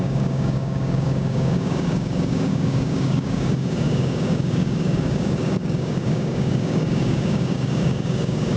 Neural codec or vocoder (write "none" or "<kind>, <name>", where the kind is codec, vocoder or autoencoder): codec, DAC